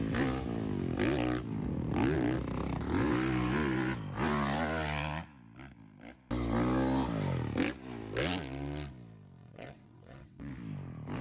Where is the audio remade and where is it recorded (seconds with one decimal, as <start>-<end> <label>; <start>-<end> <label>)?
0.0-9.4 recorded; 9.4-10.5 remade; 10.5-11.2 recorded